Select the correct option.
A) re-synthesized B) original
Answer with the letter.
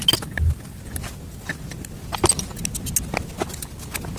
B